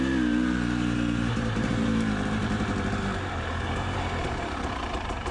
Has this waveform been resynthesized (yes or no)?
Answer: yes